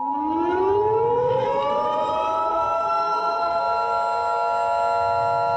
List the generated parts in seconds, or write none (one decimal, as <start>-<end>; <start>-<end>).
1.1-1.7; 2.5-3.6